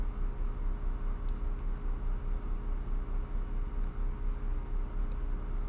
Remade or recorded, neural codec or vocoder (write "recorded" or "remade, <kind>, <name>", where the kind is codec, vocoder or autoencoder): recorded